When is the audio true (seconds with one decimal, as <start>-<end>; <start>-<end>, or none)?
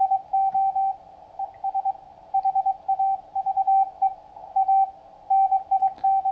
0.0-6.3